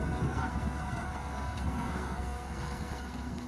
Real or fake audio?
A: fake